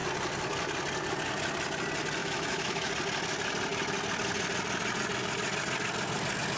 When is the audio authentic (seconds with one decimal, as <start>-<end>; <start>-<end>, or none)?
0.0-2.2; 2.9-6.6